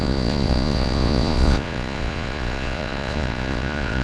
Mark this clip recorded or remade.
remade